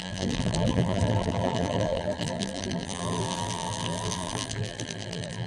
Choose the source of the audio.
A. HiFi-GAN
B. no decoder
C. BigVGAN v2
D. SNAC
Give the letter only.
C